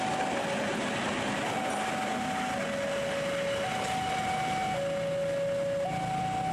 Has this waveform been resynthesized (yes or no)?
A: no